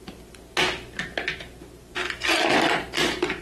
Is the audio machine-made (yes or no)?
no